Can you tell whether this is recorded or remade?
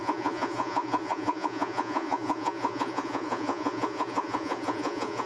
remade